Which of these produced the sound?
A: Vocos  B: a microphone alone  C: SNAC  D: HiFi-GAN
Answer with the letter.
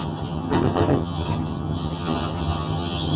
D